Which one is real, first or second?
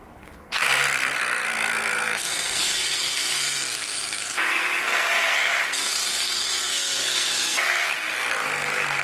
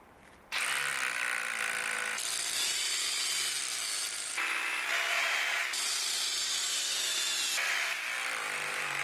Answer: second